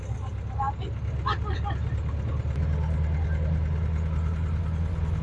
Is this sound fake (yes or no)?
no